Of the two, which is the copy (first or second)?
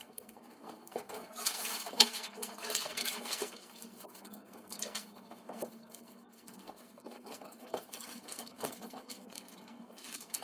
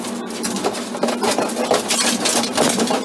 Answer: first